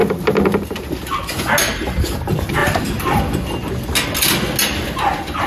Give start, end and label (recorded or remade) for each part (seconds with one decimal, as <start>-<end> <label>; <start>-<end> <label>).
0.0-2.6 recorded; 2.6-3.2 remade; 3.2-5.5 recorded